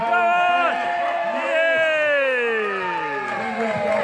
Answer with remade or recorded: recorded